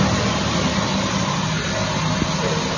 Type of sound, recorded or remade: recorded